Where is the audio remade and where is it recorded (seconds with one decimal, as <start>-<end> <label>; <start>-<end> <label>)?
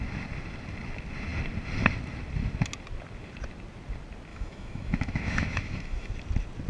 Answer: 0.0-4.3 recorded; 4.3-6.1 remade; 6.1-6.7 recorded